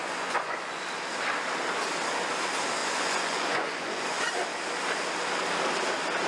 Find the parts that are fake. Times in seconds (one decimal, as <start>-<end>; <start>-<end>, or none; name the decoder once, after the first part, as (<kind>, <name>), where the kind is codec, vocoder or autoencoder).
0.0-0.8 (vocoder, Vocos); 2.8-4.3